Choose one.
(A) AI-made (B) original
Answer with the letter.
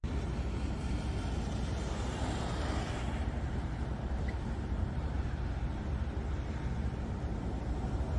A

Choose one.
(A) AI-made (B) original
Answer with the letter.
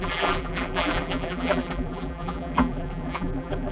A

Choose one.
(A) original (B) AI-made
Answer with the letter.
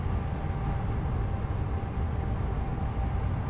A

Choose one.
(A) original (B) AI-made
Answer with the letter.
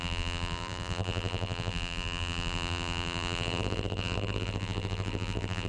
B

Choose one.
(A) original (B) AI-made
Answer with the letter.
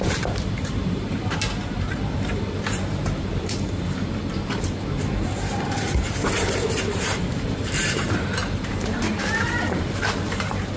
B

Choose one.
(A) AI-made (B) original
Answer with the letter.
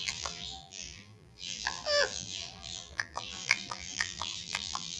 A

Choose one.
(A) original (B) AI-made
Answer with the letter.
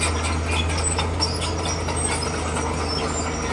A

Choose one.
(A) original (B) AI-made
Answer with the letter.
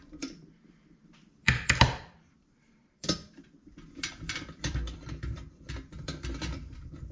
B